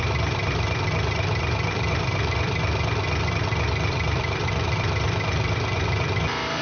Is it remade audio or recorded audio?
remade